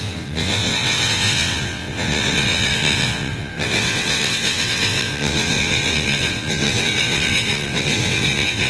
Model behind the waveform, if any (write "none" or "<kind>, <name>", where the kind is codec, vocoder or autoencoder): vocoder, WaveNeXt